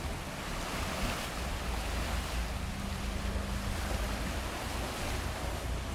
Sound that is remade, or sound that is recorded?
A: recorded